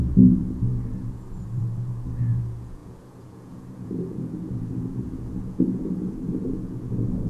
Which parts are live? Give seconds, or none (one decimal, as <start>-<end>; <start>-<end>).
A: none